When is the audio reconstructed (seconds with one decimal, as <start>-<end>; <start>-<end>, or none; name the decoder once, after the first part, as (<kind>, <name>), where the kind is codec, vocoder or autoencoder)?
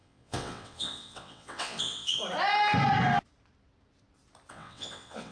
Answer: 0.0-2.2 (vocoder, WaveNeXt); 4.5-5.3